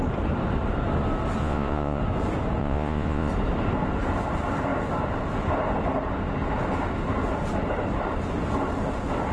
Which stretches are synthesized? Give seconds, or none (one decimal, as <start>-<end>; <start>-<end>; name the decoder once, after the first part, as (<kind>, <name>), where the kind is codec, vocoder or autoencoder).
1.4-2.0 (vocoder, Vocos); 2.6-3.3